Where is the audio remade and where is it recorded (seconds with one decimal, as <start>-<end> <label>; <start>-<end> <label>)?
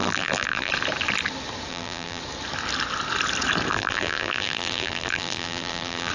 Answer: 0.0-0.7 remade; 0.7-1.7 recorded; 1.7-2.2 remade; 2.2-3.7 recorded; 3.7-6.1 remade